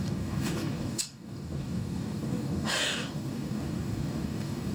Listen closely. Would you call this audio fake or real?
fake